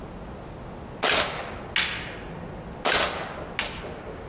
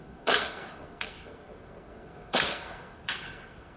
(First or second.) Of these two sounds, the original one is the first